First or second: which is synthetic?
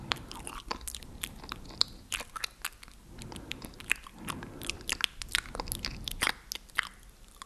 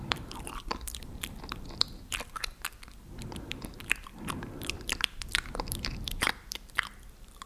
second